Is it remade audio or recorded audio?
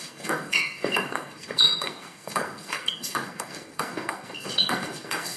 remade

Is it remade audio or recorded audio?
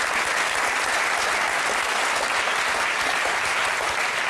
recorded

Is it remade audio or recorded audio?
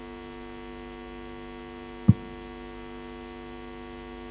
recorded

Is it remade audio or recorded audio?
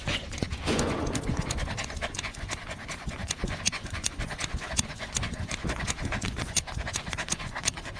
remade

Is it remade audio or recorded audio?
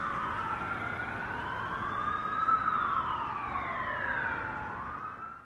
recorded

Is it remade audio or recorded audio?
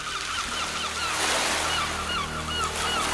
recorded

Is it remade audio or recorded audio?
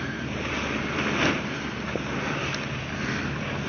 recorded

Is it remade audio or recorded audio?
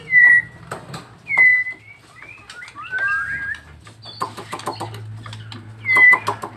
recorded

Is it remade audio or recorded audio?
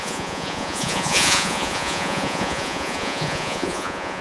remade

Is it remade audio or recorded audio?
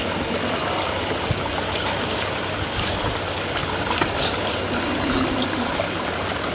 recorded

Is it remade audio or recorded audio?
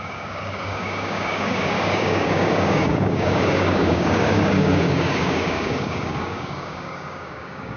remade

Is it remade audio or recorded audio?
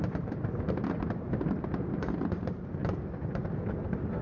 recorded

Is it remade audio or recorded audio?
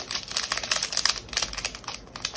recorded